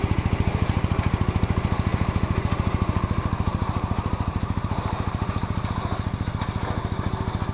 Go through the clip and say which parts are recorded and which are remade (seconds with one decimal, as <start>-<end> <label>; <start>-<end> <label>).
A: 0.0-4.3 recorded; 4.3-5.7 remade; 5.7-7.5 recorded